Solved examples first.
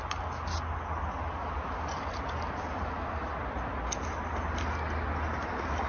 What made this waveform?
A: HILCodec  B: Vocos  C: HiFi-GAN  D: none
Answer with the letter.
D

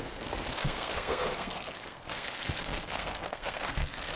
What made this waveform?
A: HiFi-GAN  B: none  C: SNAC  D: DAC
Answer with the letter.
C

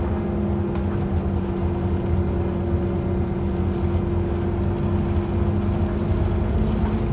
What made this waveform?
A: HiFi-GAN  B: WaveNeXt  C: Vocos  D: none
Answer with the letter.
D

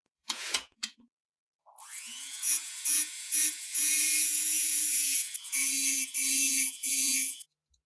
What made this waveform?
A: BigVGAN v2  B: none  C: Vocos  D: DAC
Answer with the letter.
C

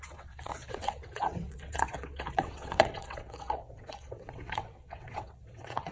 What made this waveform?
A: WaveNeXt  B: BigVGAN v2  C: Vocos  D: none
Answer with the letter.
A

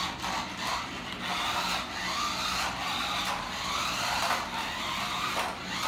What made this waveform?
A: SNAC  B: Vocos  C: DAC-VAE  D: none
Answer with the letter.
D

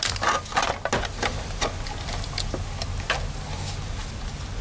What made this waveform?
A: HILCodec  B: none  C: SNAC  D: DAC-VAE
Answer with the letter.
B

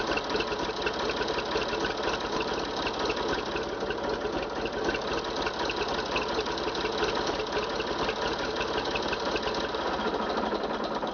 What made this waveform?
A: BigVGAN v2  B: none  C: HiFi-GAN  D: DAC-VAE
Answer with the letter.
B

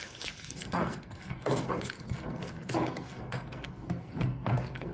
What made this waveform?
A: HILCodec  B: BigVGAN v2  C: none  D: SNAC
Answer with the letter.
D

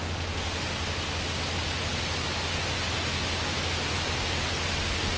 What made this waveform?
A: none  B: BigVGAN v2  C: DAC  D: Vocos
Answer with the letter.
A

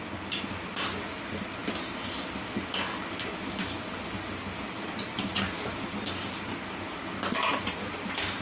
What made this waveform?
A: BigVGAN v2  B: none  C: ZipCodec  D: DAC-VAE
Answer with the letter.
B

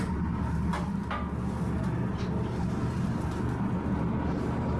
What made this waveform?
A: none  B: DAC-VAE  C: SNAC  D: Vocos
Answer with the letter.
A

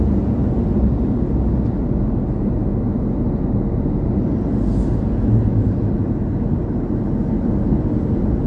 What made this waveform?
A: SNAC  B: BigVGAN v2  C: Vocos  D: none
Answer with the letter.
D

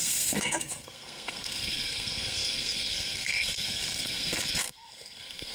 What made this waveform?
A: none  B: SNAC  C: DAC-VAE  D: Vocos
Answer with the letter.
B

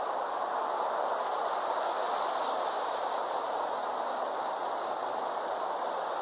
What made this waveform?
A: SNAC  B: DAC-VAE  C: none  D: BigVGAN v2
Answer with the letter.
C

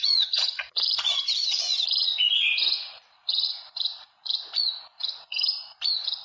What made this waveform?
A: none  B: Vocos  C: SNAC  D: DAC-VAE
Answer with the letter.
B